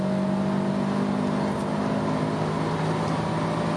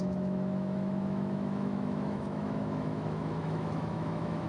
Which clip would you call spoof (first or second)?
second